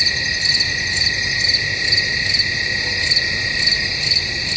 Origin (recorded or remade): recorded